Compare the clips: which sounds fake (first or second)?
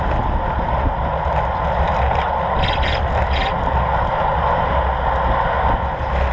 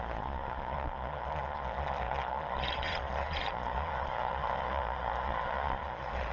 second